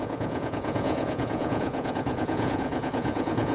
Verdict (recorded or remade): remade